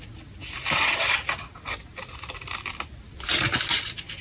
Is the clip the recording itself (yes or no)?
yes